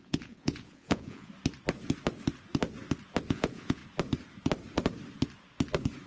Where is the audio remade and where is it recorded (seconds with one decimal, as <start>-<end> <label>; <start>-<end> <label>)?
0.0-1.3 remade; 1.3-3.3 recorded; 3.3-3.8 remade; 3.8-6.1 recorded